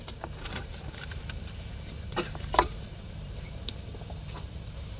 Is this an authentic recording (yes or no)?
no